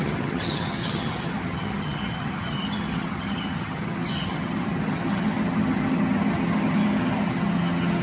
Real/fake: fake